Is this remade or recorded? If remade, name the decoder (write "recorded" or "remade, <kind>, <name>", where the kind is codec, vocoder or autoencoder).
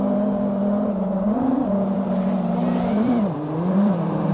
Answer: remade, vocoder, BigVGAN v2